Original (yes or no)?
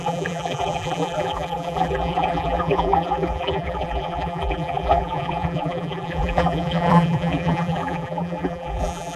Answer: no